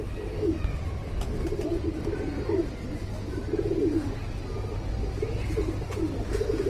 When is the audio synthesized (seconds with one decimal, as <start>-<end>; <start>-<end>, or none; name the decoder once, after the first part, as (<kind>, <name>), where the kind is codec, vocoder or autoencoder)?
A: 0.7-3.0 (vocoder, BigVGAN v2)